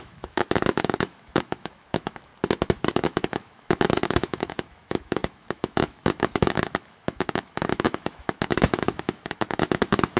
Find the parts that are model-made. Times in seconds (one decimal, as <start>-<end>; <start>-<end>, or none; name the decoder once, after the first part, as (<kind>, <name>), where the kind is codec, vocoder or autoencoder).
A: 0.0-2.3 (autoencoder, DAC-VAE); 2.9-10.2